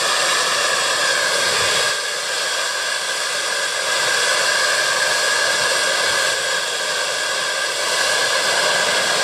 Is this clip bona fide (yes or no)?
yes